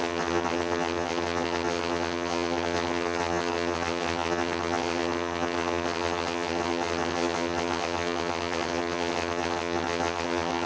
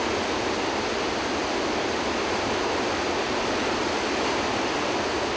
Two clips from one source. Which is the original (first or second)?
second